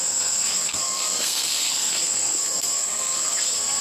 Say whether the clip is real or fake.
fake